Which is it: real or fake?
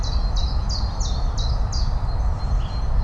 real